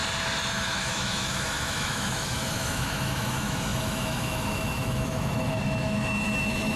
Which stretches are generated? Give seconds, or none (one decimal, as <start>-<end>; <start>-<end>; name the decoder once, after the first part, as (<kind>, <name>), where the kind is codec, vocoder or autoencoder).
0.5-6.8 (autoencoder, DAC-VAE)